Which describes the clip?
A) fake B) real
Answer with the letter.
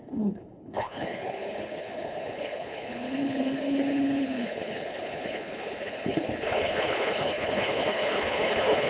A